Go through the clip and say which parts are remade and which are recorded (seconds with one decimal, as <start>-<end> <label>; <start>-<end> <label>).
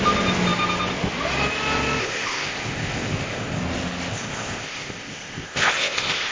0.0-2.0 recorded; 2.0-3.6 remade; 3.6-4.1 recorded; 4.1-6.3 remade